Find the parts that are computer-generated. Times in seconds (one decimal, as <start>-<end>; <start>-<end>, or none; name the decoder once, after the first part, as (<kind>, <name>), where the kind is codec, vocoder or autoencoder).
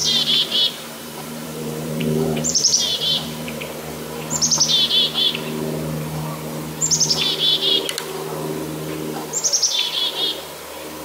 0.0-3.6 (vocoder, BigVGAN v2)